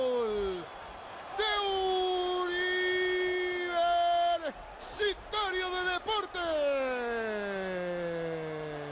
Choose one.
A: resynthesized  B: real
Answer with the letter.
B